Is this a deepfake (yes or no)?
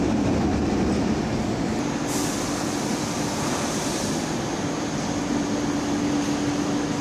no